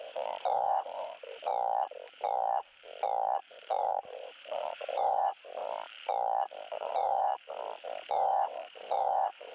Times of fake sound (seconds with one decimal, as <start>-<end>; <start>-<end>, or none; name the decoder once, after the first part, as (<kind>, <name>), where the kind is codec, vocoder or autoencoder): 0.0-1.5 (vocoder, Vocos); 3.5-5.6; 6.7-7.3; 8.1-9.5